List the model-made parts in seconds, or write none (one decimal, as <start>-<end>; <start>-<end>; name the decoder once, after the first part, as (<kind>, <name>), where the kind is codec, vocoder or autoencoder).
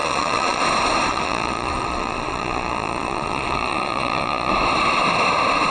0.0-0.6 (vocoder, Vocos); 1.1-4.5